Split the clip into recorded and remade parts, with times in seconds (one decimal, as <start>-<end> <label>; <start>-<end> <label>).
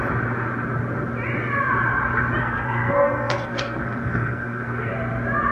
0.0-2.4 recorded; 2.4-4.9 remade; 4.9-5.5 recorded